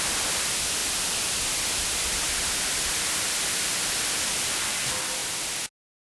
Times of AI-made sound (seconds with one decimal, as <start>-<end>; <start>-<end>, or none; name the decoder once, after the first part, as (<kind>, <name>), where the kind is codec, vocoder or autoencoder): none